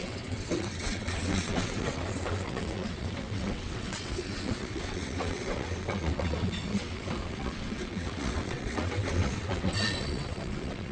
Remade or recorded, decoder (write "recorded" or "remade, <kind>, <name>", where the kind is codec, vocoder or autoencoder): remade, vocoder, WaveNeXt